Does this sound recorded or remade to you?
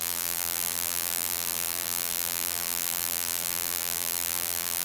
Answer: remade